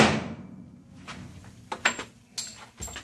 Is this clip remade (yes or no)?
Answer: no